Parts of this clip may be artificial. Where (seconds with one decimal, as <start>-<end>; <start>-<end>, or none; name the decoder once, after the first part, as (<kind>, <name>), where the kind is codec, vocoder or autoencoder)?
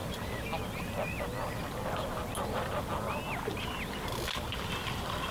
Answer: none